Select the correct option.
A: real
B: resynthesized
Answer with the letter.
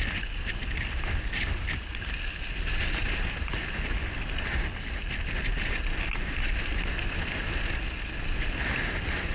A